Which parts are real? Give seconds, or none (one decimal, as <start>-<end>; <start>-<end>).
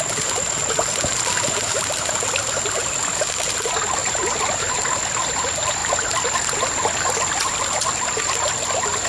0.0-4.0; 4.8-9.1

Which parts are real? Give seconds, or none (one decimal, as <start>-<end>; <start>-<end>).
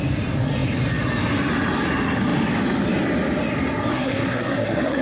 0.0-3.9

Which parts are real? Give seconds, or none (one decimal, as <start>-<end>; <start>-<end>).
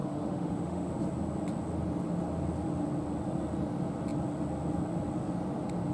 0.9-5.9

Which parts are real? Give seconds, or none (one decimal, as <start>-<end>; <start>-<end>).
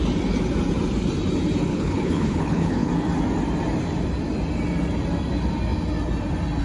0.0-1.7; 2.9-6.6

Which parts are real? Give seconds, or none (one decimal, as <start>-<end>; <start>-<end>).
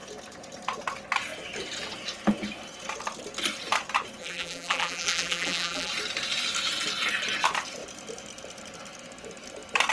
0.0-4.2; 5.9-9.9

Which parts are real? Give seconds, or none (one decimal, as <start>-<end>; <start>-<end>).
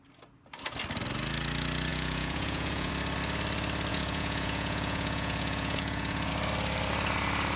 0.0-1.9; 2.9-3.9; 6.3-7.6